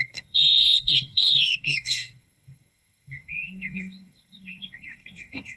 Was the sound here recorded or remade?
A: remade